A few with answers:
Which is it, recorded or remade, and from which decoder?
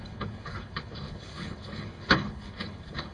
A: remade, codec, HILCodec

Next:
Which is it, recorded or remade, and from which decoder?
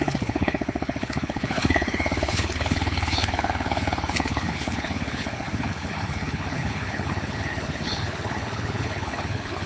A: remade, codec, HILCodec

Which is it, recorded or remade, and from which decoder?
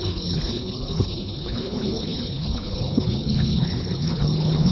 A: remade, codec, HILCodec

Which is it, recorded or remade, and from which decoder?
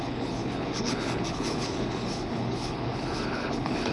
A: remade, codec, HILCodec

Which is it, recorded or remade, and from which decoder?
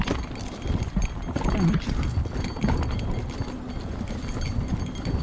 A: recorded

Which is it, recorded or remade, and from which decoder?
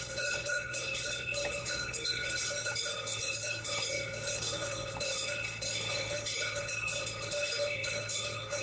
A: remade, codec, HILCodec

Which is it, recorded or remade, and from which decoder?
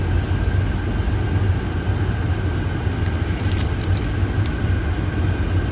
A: recorded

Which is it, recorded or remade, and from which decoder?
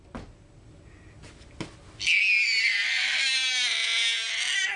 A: recorded